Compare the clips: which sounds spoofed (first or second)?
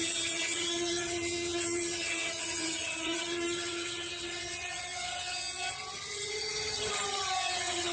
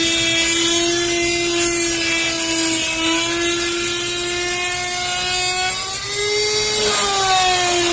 first